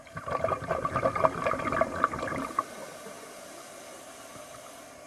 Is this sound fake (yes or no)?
no